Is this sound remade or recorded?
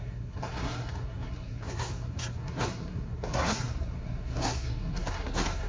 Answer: remade